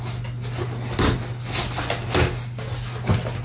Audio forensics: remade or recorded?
recorded